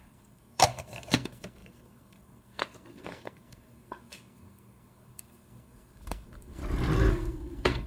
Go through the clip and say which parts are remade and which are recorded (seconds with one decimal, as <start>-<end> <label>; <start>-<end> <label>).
0.0-6.6 remade; 6.6-7.1 recorded; 7.1-7.9 remade